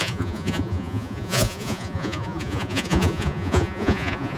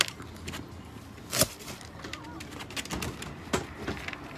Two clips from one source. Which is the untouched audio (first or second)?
second